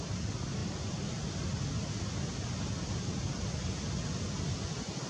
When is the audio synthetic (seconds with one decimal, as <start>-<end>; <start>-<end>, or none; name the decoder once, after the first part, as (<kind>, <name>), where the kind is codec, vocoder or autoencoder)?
none